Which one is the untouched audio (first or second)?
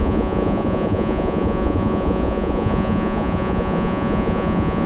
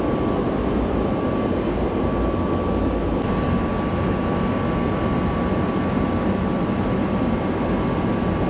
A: second